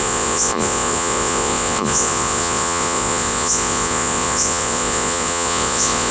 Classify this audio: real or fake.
fake